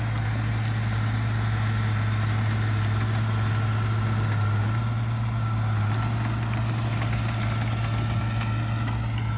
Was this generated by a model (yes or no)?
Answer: no